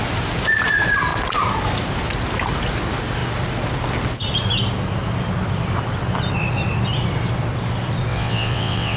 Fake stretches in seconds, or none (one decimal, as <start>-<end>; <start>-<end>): 8.1-9.0